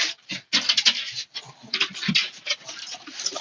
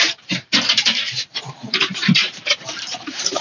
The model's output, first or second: second